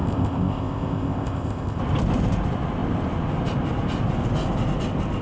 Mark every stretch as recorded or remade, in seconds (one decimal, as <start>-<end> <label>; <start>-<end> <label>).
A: 0.0-1.8 remade; 1.8-5.2 recorded

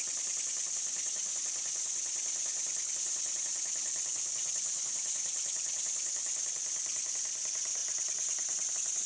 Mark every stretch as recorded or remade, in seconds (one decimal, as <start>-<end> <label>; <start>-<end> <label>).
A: 0.0-9.1 recorded

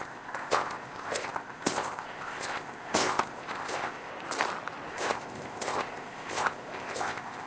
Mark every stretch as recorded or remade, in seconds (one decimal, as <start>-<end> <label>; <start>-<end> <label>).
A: 0.0-4.1 remade; 4.1-4.9 recorded; 4.9-7.5 remade

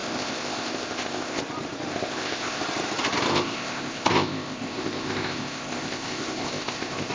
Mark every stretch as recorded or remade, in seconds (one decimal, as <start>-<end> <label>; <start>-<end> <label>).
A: 0.0-1.4 remade; 1.4-1.9 recorded; 1.9-2.6 remade; 2.6-3.3 recorded; 3.3-7.1 remade

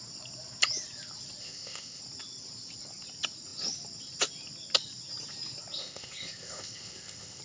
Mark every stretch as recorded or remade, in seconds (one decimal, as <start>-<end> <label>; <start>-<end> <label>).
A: 0.0-1.4 recorded; 1.4-2.0 remade; 2.0-5.8 recorded; 5.8-7.4 remade